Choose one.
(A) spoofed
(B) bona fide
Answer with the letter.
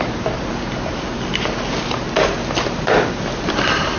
B